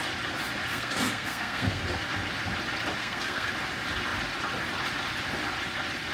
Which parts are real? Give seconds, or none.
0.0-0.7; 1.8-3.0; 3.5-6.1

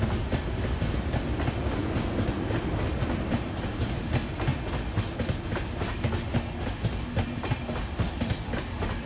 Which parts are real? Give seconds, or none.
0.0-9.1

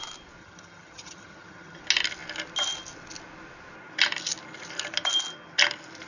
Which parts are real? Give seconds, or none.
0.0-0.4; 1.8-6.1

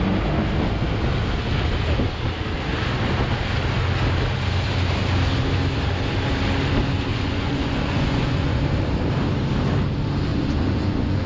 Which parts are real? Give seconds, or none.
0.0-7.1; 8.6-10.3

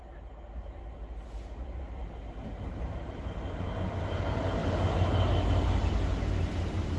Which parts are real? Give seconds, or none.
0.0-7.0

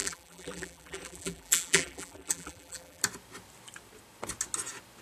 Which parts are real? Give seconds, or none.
3.0-5.0

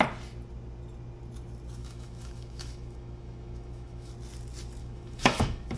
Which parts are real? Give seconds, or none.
0.0-1.8; 4.1-4.8

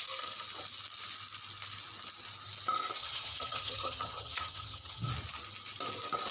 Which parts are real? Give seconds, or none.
0.0-3.0; 5.1-6.3